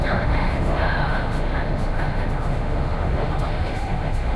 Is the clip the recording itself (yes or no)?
no